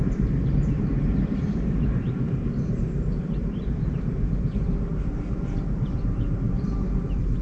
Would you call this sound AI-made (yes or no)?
yes